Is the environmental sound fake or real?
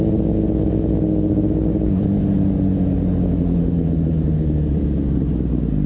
real